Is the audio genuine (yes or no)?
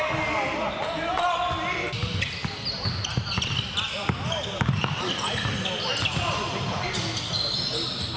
yes